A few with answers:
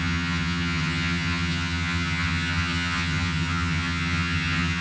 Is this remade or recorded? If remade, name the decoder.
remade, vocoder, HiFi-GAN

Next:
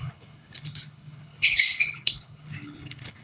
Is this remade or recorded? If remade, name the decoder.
remade, codec, HILCodec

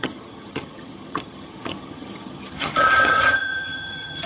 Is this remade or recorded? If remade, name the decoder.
remade, vocoder, HiFi-GAN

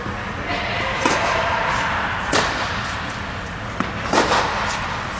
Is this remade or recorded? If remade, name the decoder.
recorded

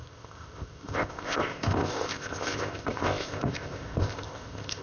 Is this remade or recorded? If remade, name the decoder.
remade, codec, ZipCodec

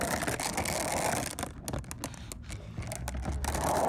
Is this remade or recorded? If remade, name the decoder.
recorded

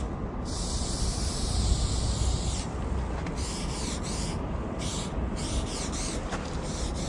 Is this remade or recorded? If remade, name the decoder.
recorded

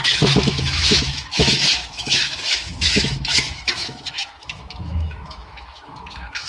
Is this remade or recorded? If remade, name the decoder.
remade, autoencoder, DAC-VAE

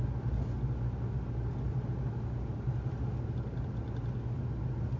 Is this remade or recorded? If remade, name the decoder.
recorded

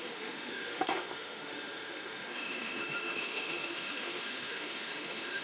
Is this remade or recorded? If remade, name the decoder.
remade, autoencoder, DAC-VAE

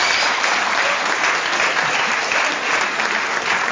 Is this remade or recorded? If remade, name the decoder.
recorded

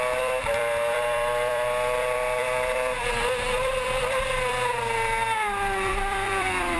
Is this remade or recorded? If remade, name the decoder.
remade, vocoder, BigVGAN v2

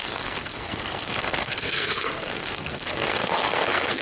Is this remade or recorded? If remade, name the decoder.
remade, codec, SNAC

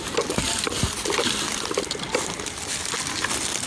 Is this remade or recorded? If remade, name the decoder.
recorded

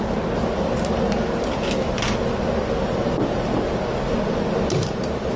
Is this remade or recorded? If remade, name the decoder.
recorded